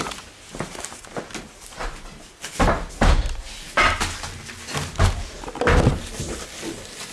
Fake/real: real